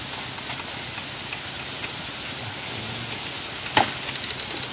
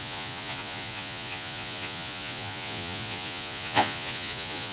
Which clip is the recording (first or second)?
first